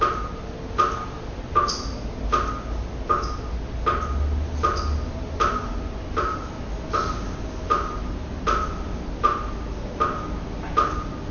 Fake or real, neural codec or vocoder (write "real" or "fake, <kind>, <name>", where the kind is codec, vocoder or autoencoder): real